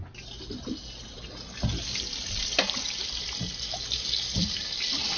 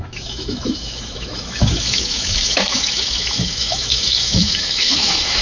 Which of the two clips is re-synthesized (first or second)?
second